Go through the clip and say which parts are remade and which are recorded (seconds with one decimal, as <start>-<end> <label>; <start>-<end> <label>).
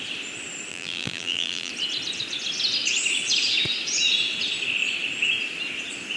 0.0-0.7 recorded; 0.7-1.7 remade; 1.7-6.2 recorded